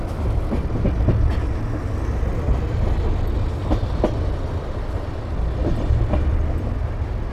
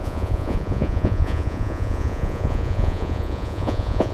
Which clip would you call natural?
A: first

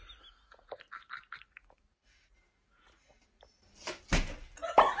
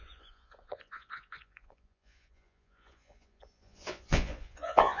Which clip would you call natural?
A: first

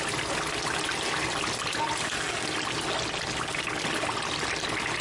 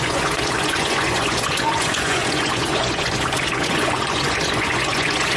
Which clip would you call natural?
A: first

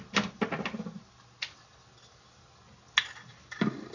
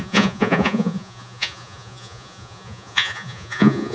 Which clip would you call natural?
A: first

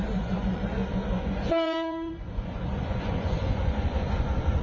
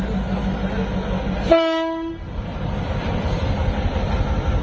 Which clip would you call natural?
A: second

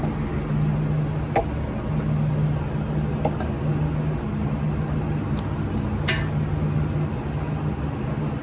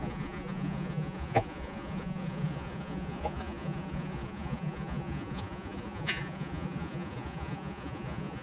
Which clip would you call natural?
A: first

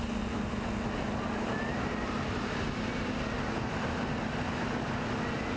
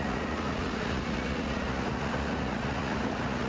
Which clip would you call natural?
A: first